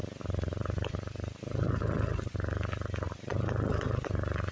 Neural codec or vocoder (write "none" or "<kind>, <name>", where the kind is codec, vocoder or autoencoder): none